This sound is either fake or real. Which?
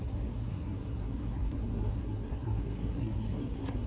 fake